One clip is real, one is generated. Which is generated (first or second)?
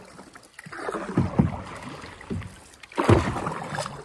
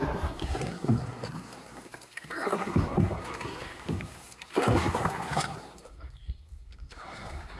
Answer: second